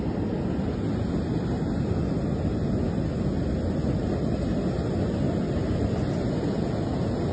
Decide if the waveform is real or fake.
real